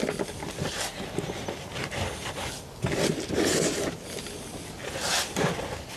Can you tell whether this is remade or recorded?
recorded